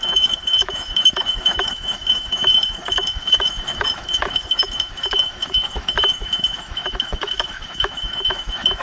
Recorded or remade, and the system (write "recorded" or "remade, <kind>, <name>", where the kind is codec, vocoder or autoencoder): remade, autoencoder, DAC-VAE